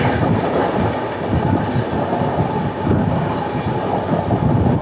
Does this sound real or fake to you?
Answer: real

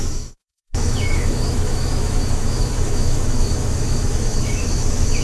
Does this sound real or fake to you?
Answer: fake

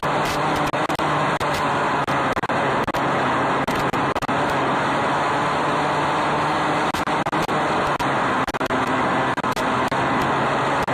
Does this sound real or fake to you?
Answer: real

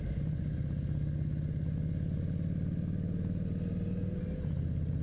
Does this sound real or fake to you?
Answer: real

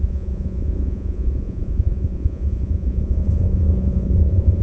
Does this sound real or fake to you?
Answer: fake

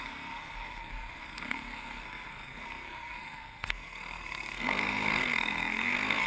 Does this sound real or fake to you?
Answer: fake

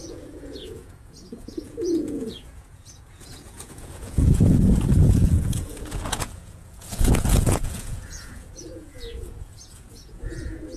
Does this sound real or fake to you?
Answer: fake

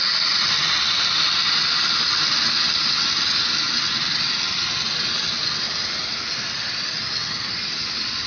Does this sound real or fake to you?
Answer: real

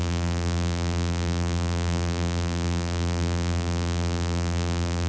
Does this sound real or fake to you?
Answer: fake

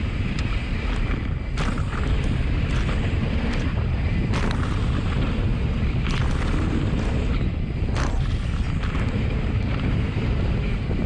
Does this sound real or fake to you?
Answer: real